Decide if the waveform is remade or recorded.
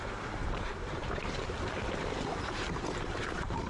remade